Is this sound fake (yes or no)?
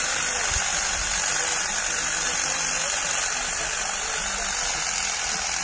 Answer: no